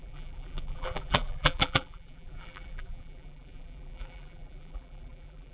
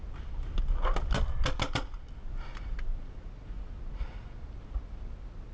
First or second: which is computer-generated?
first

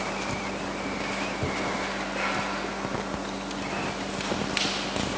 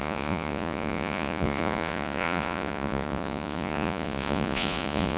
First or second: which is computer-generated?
second